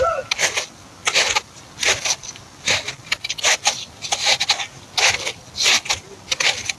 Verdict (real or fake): real